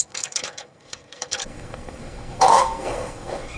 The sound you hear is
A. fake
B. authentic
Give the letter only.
A